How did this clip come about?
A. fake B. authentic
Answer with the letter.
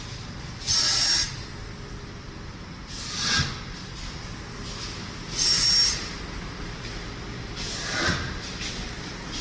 B